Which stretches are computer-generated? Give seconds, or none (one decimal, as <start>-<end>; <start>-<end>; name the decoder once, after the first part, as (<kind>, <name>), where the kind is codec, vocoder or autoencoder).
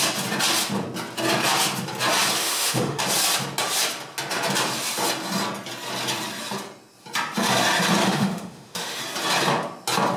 2.4-3.0 (autoencoder, DAC-VAE); 8.0-9.0